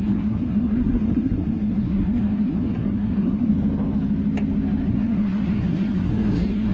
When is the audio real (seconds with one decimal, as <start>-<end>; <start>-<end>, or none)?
3.5-4.9